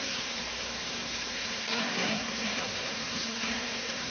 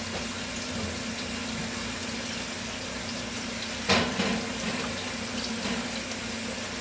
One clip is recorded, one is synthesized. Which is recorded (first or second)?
second